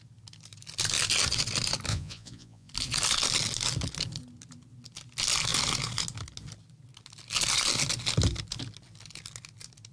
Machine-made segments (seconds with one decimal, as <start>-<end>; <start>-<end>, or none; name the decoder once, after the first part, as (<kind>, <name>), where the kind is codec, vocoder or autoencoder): 1.9-2.7 (vocoder, Vocos)